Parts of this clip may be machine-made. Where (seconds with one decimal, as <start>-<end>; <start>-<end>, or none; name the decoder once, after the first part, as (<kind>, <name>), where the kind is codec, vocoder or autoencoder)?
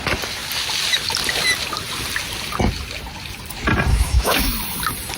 3.9-4.5 (autoencoder, DAC-VAE)